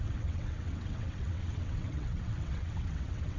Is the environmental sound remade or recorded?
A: remade